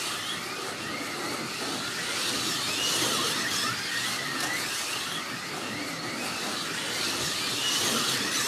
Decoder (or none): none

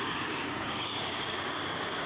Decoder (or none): codec, DAC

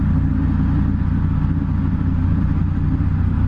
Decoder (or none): none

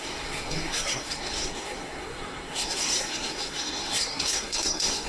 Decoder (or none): codec, SNAC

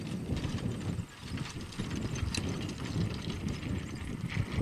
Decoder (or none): none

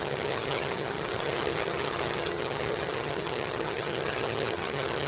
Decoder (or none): vocoder, HiFi-GAN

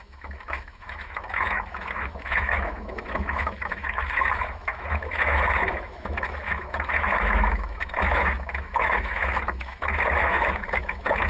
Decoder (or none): autoencoder, DAC-VAE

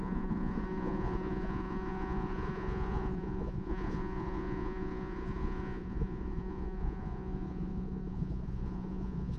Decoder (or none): vocoder, Vocos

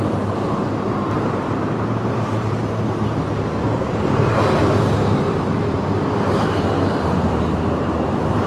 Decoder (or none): vocoder, BigVGAN v2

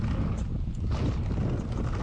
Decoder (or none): none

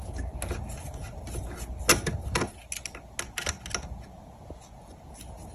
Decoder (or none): none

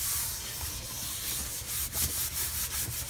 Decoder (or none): vocoder, BigVGAN v2